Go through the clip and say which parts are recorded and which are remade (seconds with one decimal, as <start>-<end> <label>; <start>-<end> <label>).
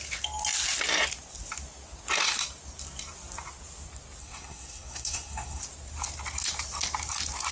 0.0-4.2 recorded; 4.2-5.6 remade; 5.6-7.5 recorded